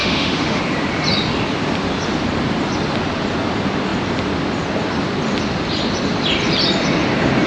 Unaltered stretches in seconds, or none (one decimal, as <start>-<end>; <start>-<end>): 0.6-7.5